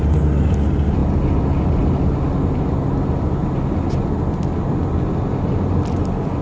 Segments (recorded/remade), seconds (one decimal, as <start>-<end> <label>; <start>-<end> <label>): 0.0-6.4 recorded

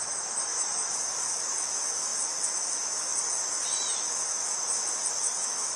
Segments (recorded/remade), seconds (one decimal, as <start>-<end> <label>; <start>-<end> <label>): 0.0-3.1 remade; 3.1-3.9 recorded; 3.9-4.4 remade; 4.4-5.2 recorded; 5.2-5.8 remade

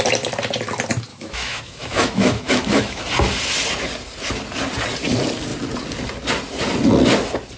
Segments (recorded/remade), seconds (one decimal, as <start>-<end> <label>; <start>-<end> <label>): 0.0-1.1 recorded; 1.1-3.0 remade; 3.0-7.6 recorded

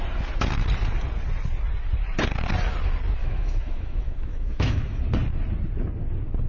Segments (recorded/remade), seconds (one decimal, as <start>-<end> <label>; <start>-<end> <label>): 0.0-3.2 recorded; 3.2-5.0 remade; 5.0-6.5 recorded

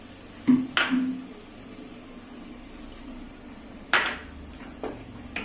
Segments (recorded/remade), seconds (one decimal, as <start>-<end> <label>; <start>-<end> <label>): 0.0-5.4 recorded

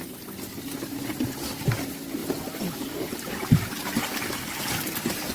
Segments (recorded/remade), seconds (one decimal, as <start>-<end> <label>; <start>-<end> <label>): 0.0-5.3 recorded